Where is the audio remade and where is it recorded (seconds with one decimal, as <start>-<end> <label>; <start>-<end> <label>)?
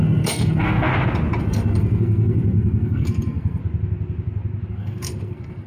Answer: 0.0-0.9 remade; 0.9-1.4 recorded; 1.4-3.6 remade; 3.6-4.7 recorded; 4.7-5.7 remade